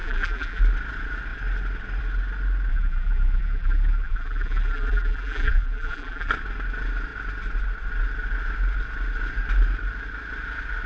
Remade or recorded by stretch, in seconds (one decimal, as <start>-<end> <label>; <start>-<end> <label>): 0.0-0.6 remade; 0.6-2.7 recorded; 2.7-6.3 remade; 6.3-10.9 recorded